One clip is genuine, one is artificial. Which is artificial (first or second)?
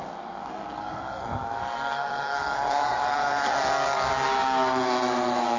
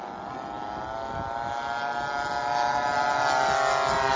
first